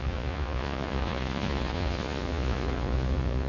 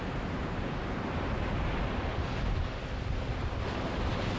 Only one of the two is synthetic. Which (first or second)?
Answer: first